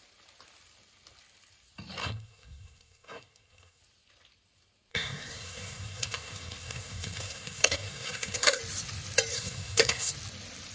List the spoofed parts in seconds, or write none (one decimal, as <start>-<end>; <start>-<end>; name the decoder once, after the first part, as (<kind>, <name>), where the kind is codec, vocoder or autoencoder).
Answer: 2.0-3.8 (codec, SNAC); 4.9-8.6; 9.3-10.1